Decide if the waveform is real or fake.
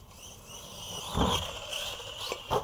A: real